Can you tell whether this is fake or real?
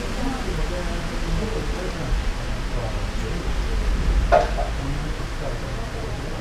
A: real